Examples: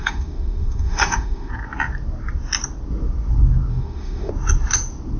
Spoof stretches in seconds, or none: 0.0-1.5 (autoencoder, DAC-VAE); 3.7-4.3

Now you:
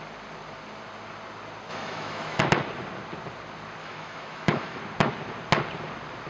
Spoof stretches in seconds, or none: 1.7-2.4 (autoencoder, DAC-VAE); 3.8-4.8

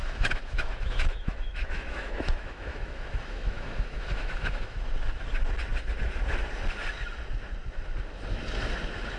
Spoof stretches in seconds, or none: 0.0-4.8 (autoencoder, DAC-VAE)